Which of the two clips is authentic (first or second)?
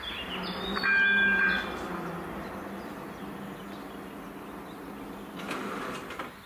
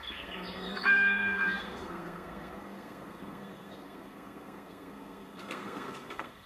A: first